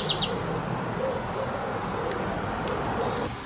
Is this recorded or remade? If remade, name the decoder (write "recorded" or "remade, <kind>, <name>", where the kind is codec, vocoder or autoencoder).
recorded